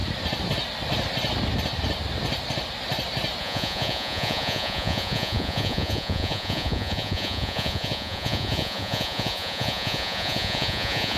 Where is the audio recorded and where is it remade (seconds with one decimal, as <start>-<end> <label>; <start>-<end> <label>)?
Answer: 0.0-3.4 recorded; 3.4-11.2 remade